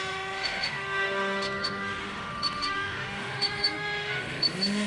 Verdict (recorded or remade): remade